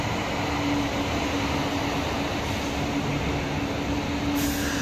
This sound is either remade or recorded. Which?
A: recorded